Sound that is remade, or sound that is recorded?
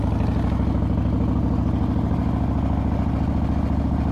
recorded